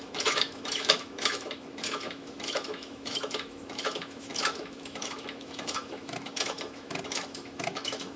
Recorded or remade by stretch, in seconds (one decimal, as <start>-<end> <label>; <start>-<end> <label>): 0.0-8.2 remade